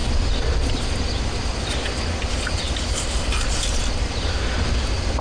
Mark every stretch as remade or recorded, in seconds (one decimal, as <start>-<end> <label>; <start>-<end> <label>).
0.0-5.2 recorded